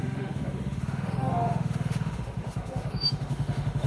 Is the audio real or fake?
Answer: fake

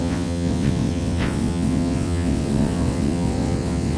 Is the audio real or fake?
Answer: fake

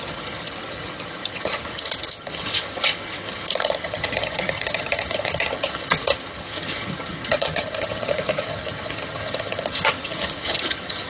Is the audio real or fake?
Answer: fake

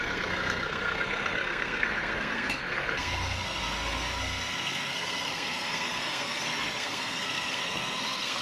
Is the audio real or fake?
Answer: fake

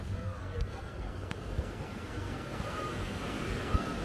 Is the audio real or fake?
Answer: fake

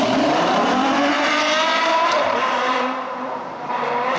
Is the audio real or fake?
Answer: fake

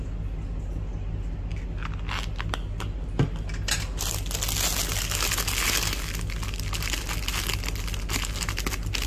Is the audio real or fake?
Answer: real